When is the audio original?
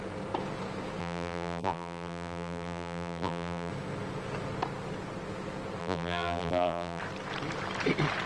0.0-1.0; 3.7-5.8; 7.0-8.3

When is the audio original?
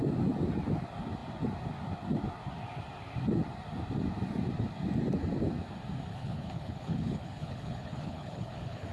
0.0-6.1